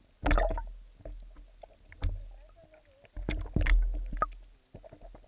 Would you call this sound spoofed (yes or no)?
no